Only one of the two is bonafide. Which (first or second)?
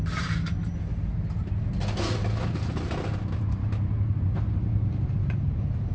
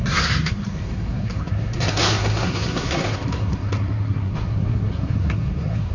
first